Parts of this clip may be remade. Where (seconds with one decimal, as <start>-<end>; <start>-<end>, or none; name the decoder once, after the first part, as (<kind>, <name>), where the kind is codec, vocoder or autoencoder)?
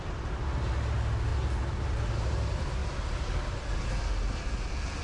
2.8-3.9 (vocoder, BigVGAN v2)